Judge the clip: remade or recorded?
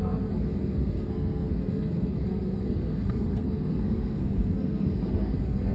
remade